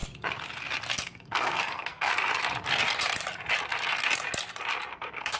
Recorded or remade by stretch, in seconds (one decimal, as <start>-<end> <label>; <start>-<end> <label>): 0.0-1.0 recorded; 1.0-2.1 remade; 2.1-4.9 recorded; 4.9-5.4 remade